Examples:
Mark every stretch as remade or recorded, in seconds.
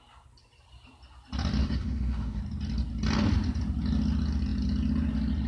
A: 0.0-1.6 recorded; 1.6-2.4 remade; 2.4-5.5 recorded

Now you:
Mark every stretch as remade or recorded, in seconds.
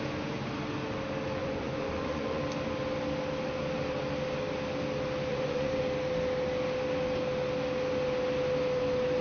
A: 0.0-1.4 recorded; 1.4-2.4 remade; 2.4-5.3 recorded; 5.3-5.8 remade; 5.8-9.2 recorded